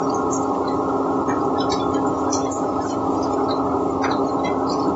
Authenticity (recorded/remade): recorded